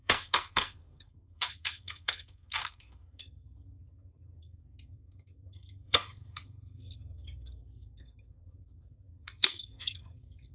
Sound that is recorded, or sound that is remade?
remade